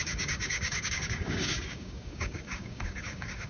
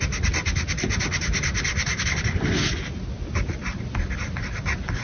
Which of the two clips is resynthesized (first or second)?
first